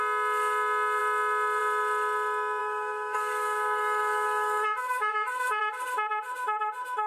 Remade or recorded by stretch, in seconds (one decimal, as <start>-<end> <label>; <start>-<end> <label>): 0.0-2.6 recorded; 2.6-5.6 remade; 5.6-7.1 recorded